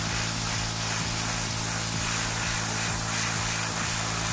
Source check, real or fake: real